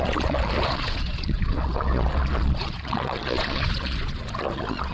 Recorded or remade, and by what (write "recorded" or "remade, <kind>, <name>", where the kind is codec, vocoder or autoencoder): remade, vocoder, Vocos